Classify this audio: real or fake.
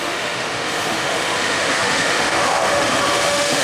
fake